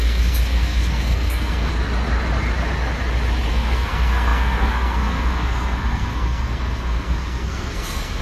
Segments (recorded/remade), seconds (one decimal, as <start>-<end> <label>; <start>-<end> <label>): 0.0-1.7 remade; 1.7-3.5 recorded; 3.5-8.2 remade